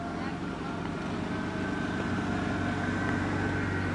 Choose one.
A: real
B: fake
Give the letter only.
A